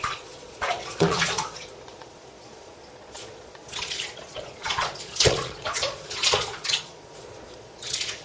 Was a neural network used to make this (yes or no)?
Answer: yes